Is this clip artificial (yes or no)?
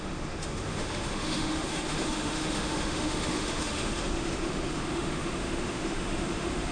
yes